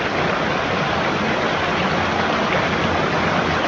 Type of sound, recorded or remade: recorded